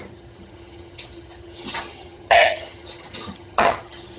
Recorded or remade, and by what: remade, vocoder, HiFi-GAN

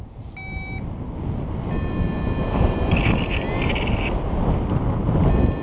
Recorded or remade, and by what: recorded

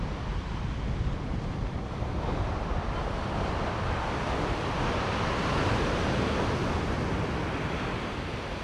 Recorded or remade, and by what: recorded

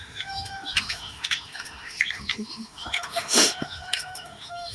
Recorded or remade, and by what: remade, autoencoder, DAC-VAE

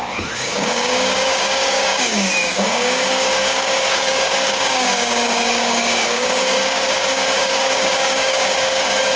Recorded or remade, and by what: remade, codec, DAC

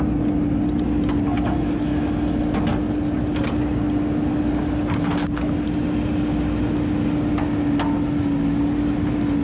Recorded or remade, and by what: recorded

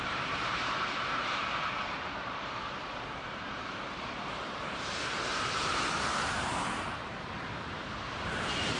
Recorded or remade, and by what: remade, vocoder, BigVGAN v2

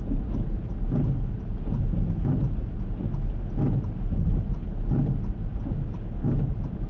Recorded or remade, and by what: recorded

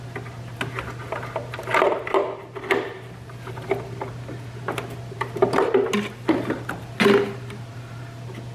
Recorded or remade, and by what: recorded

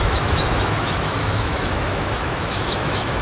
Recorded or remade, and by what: remade, autoencoder, DAC-VAE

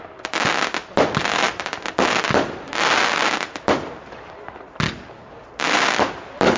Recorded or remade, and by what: recorded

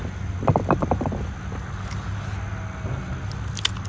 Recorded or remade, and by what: recorded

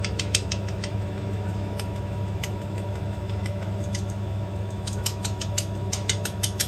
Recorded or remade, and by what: remade, autoencoder, DAC-VAE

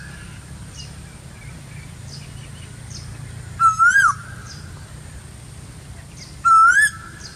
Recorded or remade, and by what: recorded